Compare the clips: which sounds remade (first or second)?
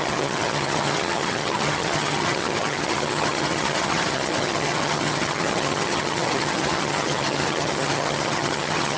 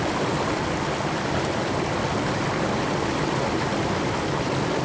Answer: first